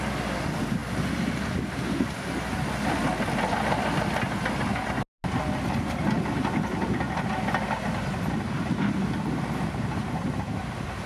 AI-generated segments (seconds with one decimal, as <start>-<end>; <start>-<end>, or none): none